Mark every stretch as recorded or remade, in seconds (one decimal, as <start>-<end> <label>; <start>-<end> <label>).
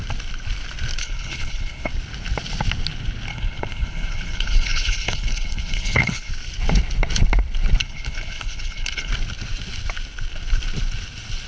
0.0-1.0 recorded; 1.0-1.9 remade; 1.9-3.3 recorded; 3.3-6.3 remade; 6.3-7.8 recorded; 7.8-9.1 remade; 9.1-11.5 recorded